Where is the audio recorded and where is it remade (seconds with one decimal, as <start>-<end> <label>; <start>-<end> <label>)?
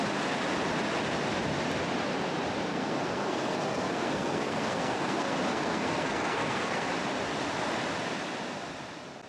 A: 0.0-2.7 recorded; 2.7-6.9 remade; 6.9-9.3 recorded